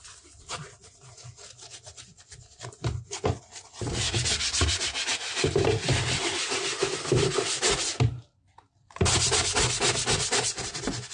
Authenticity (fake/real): real